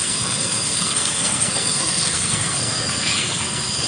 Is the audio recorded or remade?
remade